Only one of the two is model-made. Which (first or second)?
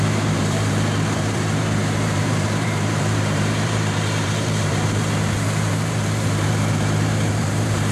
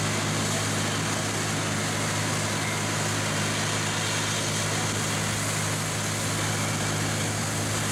first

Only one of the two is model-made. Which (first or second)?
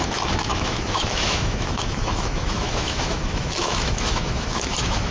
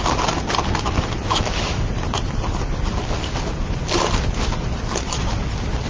first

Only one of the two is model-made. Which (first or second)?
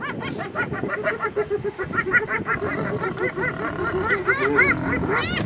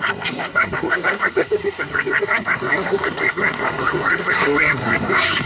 second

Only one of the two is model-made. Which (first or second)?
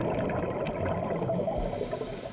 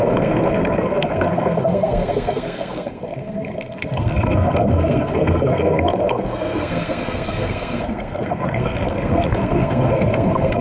second